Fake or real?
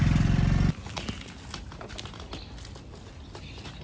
real